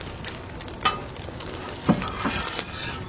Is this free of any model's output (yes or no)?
yes